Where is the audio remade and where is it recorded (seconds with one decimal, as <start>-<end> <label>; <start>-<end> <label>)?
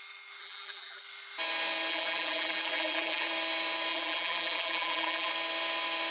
0.0-0.4 recorded; 0.4-1.0 remade; 1.0-1.9 recorded; 1.9-3.3 remade; 3.3-3.9 recorded; 3.9-5.3 remade; 5.3-6.1 recorded